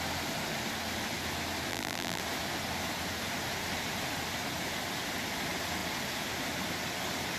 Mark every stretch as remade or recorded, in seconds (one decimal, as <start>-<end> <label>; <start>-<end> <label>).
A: 0.0-1.7 recorded; 1.7-2.2 remade; 2.2-7.4 recorded